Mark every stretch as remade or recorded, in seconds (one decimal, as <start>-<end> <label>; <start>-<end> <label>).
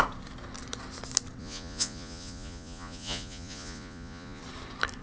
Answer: 0.0-1.4 recorded; 1.4-4.4 remade; 4.4-5.0 recorded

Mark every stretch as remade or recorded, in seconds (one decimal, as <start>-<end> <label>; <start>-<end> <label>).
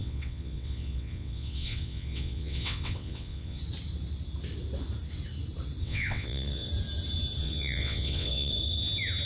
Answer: 0.0-3.6 remade; 3.6-5.8 recorded; 5.8-6.7 remade; 6.7-7.4 recorded; 7.4-8.5 remade; 8.5-9.3 recorded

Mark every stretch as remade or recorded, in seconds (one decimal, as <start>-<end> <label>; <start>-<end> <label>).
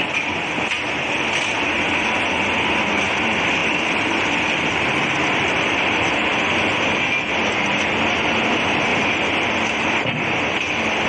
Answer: 0.0-3.6 recorded; 3.6-6.1 remade; 6.1-8.9 recorded; 8.9-9.7 remade; 9.7-11.1 recorded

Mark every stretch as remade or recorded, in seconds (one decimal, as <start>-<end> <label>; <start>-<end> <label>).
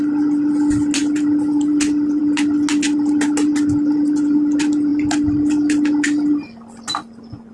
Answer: 0.0-7.5 recorded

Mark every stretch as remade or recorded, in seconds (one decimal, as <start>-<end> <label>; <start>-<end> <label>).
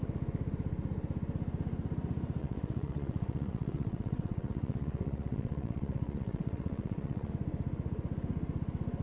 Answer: 0.0-2.4 recorded; 2.4-7.3 remade; 7.3-9.0 recorded